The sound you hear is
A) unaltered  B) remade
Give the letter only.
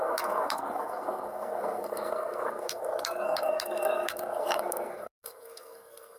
B